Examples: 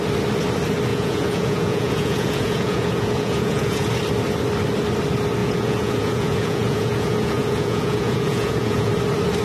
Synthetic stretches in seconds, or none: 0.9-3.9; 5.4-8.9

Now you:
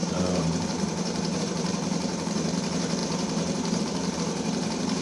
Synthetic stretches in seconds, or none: 0.0-5.0

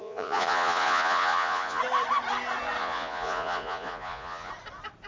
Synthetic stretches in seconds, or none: 0.0-1.8; 2.8-4.5